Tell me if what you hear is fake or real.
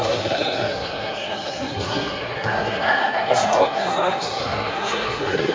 fake